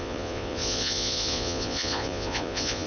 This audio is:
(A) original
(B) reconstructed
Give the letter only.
B